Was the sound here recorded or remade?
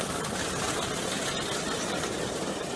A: recorded